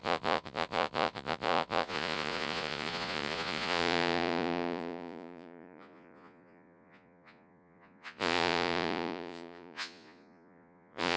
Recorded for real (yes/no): no